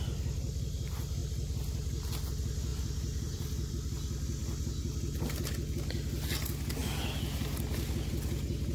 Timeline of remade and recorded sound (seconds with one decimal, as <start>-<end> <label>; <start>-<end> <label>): 0.0-2.7 recorded; 2.7-3.7 remade; 3.7-8.7 recorded